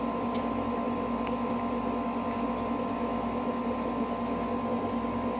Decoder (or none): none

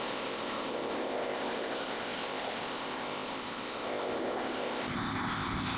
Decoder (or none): codec, ZipCodec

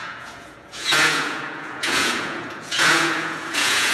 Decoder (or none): vocoder, Vocos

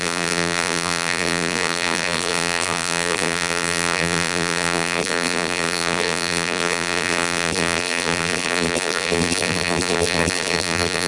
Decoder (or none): vocoder, BigVGAN v2